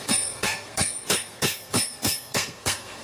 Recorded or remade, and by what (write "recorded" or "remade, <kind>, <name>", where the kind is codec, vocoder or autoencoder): remade, codec, SNAC